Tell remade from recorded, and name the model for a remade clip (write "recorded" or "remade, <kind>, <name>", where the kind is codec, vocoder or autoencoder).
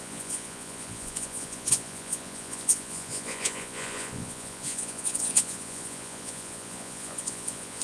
remade, vocoder, Vocos